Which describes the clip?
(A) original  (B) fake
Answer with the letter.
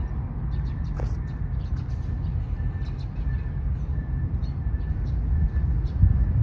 A